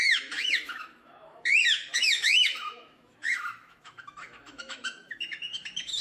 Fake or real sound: fake